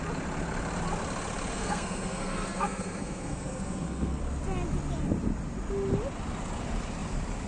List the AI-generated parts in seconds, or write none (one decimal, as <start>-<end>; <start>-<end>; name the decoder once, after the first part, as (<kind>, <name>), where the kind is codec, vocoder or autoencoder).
1.5-4.2 (codec, SNAC)